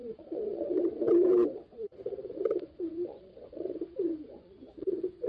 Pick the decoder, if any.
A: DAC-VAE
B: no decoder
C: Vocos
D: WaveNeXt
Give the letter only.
C